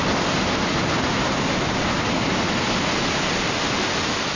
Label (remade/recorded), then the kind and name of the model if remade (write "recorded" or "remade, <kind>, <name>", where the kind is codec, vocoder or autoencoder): recorded